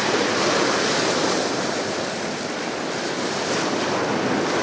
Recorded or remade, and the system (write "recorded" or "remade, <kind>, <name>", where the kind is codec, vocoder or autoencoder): recorded